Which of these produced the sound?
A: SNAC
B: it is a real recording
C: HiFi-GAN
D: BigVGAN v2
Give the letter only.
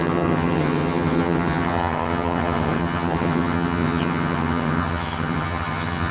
C